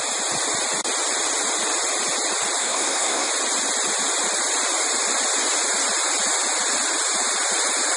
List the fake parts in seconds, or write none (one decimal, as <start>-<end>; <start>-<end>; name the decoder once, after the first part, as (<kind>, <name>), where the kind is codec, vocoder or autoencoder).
2.6-3.3 (codec, SNAC)